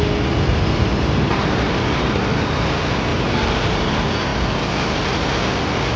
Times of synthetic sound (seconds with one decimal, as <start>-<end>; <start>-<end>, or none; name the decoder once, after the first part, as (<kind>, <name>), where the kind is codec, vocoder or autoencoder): 0.9-2.3 (vocoder, BigVGAN v2); 3.1-3.9